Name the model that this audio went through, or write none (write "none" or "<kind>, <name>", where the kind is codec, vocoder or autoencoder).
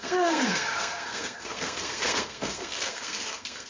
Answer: codec, SNAC